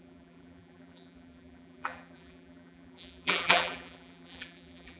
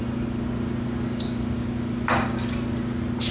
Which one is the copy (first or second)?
first